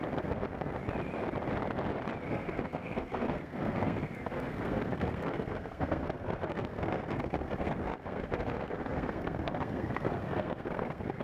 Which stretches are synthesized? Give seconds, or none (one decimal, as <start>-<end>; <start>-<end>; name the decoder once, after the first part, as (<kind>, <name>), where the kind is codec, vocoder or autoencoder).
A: 0.0-0.8 (codec, SNAC); 2.3-11.2